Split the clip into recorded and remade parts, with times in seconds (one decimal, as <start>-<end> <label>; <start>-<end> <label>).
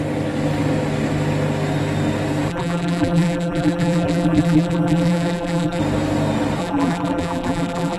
0.0-2.5 recorded; 2.5-5.8 remade; 5.8-6.6 recorded; 6.6-8.0 remade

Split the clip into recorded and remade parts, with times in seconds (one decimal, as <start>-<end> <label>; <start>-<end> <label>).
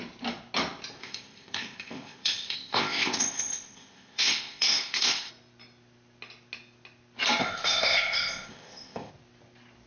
0.0-1.0 recorded; 1.0-5.3 remade; 5.3-7.4 recorded; 7.4-9.1 remade; 9.1-9.9 recorded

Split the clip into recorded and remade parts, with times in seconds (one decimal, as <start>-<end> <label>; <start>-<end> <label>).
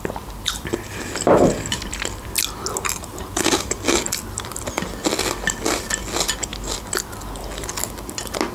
0.0-8.5 recorded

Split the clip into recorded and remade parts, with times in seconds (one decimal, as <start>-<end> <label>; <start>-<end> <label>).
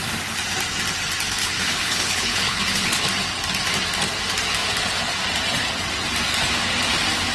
0.0-1.4 recorded; 1.4-3.0 remade; 3.0-7.3 recorded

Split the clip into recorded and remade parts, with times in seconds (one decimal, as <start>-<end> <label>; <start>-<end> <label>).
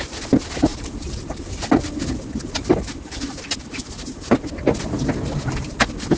0.0-0.7 recorded; 0.7-2.1 remade; 2.1-6.2 recorded